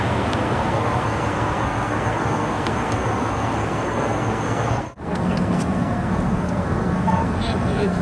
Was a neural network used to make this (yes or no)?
yes